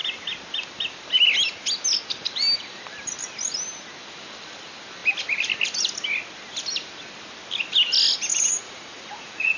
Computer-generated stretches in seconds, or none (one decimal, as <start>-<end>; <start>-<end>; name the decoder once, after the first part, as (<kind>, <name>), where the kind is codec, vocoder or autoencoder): 8.3-9.6 (vocoder, Vocos)